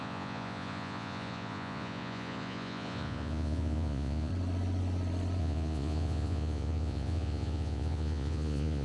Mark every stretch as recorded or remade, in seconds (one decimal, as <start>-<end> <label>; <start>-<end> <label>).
0.0-4.3 remade; 4.3-5.4 recorded; 5.4-8.8 remade